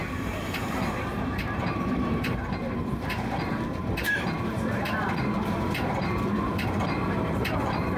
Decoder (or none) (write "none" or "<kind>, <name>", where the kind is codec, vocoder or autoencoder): vocoder, BigVGAN v2